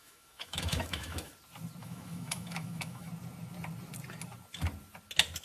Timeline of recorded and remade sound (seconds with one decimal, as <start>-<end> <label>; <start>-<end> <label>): 0.0-1.3 remade; 1.3-1.8 recorded; 1.8-3.1 remade; 3.1-5.4 recorded